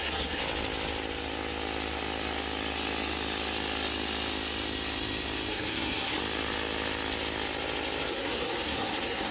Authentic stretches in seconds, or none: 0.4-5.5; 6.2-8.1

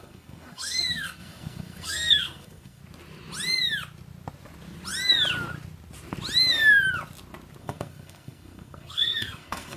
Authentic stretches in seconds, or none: 2.8-7.6

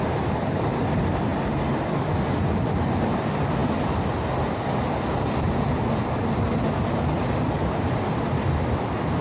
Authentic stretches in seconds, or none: 0.0-9.2

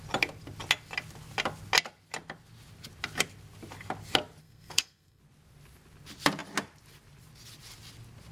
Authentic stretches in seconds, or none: 0.0-4.4; 5.2-8.3

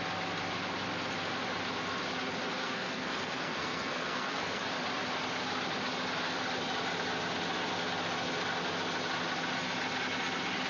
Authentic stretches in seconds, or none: 0.0-2.6; 4.6-10.7

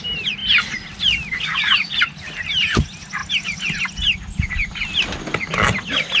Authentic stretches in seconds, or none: 0.0-6.2

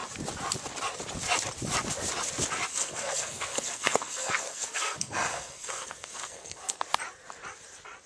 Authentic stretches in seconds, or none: 0.0-2.7; 6.8-8.1

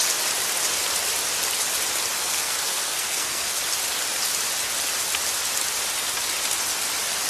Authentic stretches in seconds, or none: 0.0-2.2; 3.6-7.3